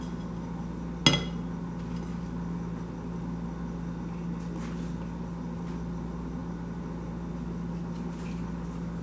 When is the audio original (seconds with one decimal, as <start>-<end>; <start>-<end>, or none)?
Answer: 0.0-9.0